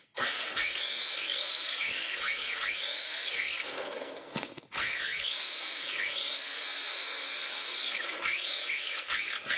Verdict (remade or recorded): remade